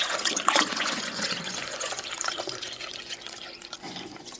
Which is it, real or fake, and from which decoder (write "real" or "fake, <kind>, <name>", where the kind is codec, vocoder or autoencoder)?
fake, vocoder, Vocos